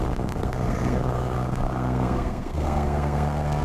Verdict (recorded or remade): remade